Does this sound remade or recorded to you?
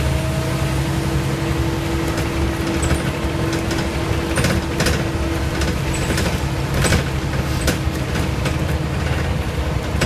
recorded